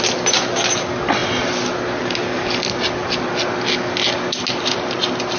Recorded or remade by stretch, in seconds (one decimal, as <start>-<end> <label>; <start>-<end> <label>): 0.0-5.4 recorded